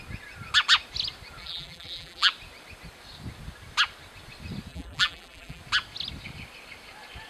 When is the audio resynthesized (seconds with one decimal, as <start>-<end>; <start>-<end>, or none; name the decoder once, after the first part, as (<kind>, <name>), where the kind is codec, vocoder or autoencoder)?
1.4-2.3 (vocoder, BigVGAN v2); 4.7-5.6